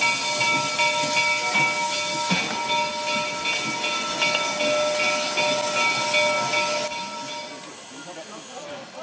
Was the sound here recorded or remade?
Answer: recorded